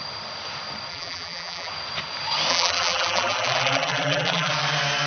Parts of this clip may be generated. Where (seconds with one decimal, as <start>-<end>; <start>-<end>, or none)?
0.9-1.7; 2.5-4.5